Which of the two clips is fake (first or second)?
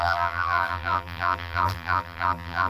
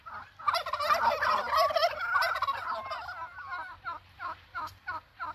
first